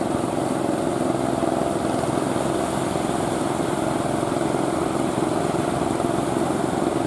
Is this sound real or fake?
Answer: real